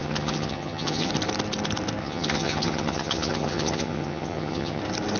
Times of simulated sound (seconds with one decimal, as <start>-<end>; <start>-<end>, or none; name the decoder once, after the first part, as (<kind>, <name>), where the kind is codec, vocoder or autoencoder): 0.0-1.1 (vocoder, HiFi-GAN); 2.0-4.8